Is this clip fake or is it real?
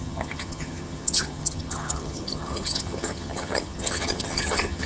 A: fake